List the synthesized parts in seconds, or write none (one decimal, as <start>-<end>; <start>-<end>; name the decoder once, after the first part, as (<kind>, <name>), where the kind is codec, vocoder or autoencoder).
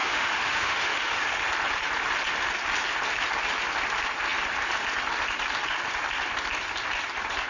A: 0.0-1.4 (autoencoder, DAC-VAE)